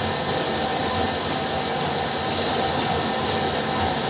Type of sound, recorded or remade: recorded